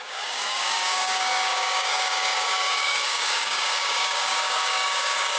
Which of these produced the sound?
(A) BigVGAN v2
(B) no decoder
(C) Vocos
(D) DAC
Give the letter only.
D